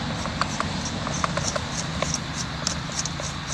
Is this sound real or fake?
real